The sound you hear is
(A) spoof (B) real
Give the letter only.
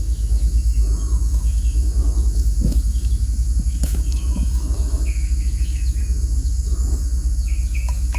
A